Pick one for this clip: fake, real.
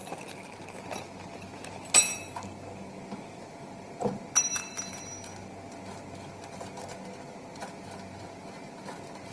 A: real